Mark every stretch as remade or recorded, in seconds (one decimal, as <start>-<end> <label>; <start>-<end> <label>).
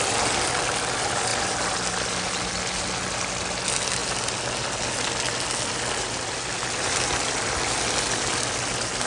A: 0.0-9.1 recorded